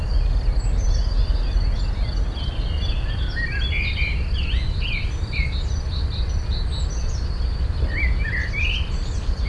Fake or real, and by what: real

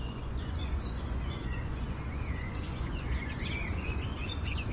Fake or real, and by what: fake, vocoder, Vocos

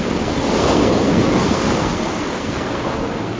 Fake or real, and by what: fake, codec, SNAC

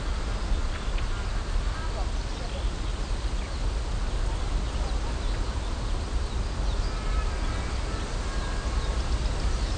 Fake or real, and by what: real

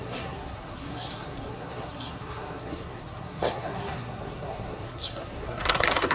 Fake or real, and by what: fake, codec, SNAC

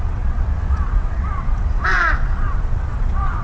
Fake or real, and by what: fake, vocoder, WaveNeXt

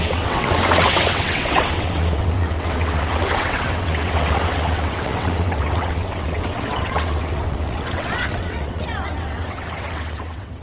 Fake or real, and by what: fake, vocoder, WaveNeXt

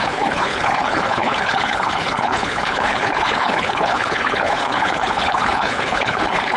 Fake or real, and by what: fake, codec, HILCodec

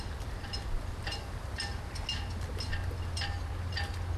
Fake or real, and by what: real